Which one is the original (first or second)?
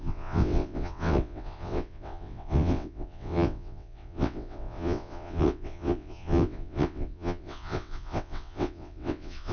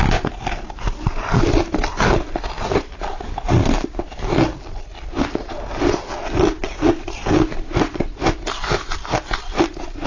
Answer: second